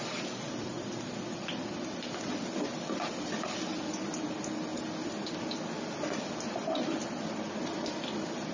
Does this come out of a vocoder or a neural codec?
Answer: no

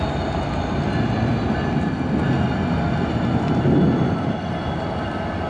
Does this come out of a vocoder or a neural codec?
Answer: no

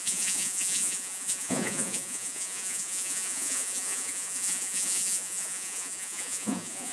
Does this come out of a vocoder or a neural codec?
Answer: yes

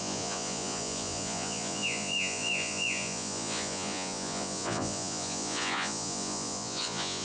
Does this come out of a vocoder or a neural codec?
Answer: yes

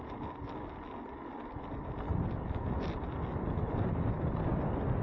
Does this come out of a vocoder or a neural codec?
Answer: no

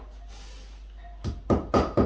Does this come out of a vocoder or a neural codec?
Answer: no